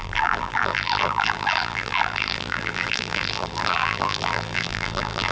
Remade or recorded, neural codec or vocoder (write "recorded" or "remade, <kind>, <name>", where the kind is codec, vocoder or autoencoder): remade, vocoder, BigVGAN v2